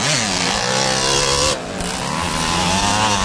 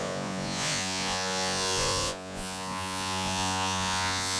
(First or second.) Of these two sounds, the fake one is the second